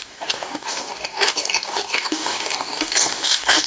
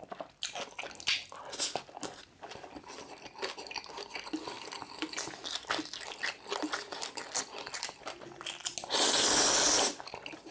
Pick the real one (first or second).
second